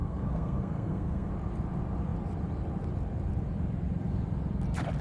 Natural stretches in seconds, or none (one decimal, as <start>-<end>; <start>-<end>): 1.3-5.0